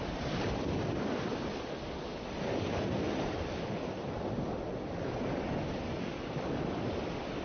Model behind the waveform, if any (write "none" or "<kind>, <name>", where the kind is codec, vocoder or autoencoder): none